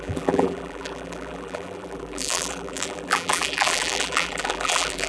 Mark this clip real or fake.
fake